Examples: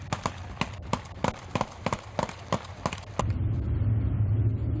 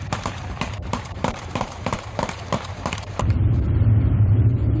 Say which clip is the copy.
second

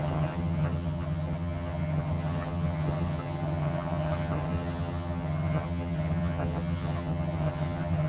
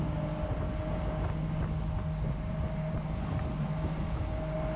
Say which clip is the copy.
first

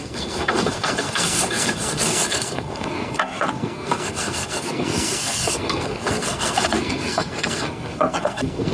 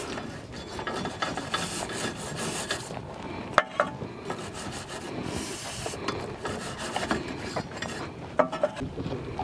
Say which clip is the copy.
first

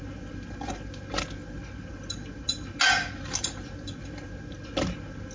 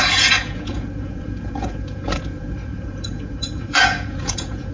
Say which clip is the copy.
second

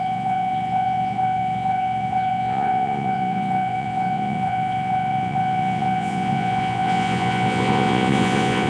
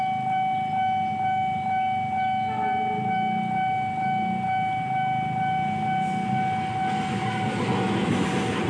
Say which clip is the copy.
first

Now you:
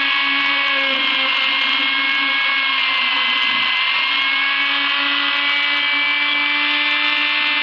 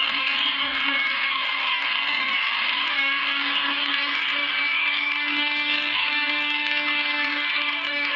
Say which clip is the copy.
second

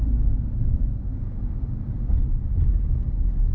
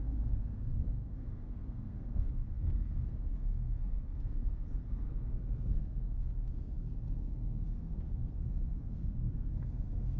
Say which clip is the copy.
second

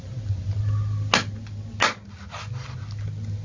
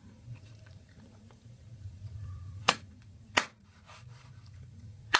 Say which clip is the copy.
second